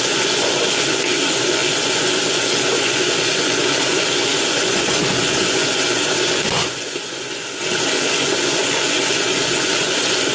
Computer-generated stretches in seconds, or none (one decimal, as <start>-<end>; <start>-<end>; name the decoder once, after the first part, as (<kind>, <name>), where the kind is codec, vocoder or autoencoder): 0.0-10.3 (vocoder, Vocos)